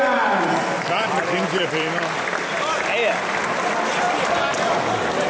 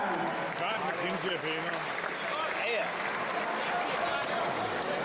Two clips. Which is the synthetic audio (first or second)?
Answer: first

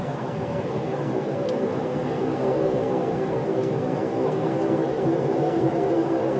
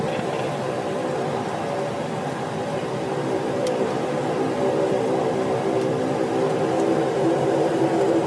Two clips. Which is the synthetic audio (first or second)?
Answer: first